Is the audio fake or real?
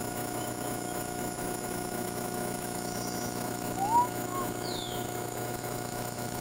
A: fake